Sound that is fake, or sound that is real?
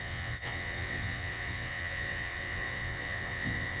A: fake